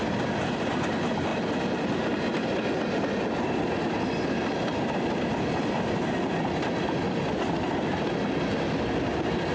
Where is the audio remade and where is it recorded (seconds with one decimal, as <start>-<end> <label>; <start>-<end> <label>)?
0.0-9.5 recorded